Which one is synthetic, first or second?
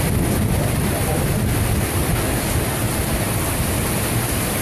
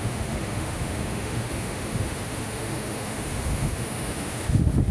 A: second